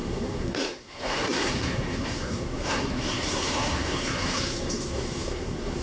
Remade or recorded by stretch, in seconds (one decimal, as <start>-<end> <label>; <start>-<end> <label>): 0.0-5.8 remade